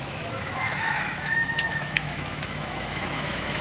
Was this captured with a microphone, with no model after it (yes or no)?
no